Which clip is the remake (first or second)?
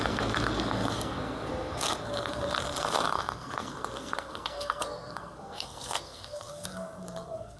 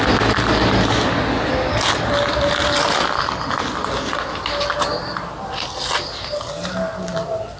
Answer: first